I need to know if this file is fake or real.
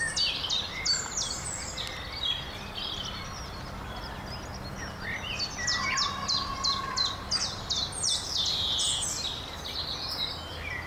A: real